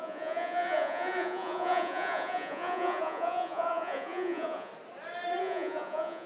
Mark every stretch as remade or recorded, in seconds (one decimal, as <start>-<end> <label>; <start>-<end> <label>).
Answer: 0.0-4.7 remade; 4.7-5.4 recorded; 5.4-6.3 remade